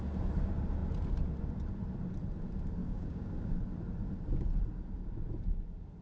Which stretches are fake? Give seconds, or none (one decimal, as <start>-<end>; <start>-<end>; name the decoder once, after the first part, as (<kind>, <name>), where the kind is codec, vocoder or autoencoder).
2.8-3.6 (codec, DAC)